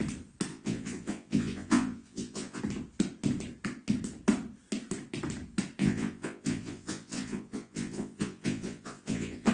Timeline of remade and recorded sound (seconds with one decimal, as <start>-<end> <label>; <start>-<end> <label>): 0.0-0.5 recorded; 0.5-2.6 remade; 2.6-5.8 recorded; 5.8-9.5 remade